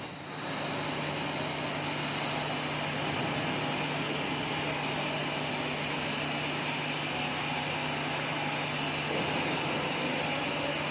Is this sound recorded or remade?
recorded